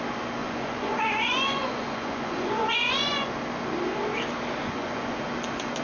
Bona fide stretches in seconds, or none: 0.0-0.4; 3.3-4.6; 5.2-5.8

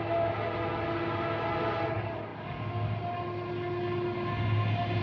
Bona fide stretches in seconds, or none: 0.0-5.0

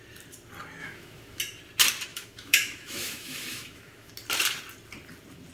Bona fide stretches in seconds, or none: 0.0-0.8; 1.4-2.1; 4.1-5.5

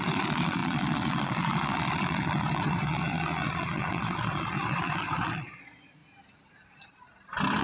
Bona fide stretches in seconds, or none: 6.0-7.6

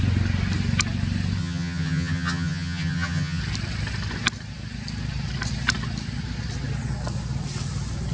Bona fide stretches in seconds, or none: 0.0-1.4; 3.4-8.1

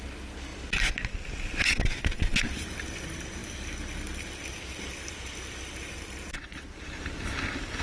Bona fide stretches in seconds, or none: 0.0-7.8